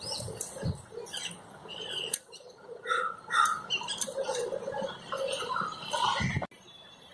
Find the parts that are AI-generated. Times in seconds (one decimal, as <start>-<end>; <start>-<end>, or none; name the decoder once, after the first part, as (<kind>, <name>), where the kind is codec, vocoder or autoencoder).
none